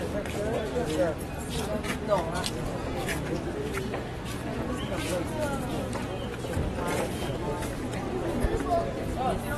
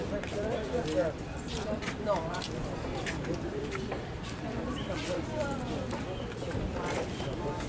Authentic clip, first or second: first